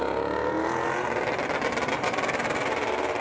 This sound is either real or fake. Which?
real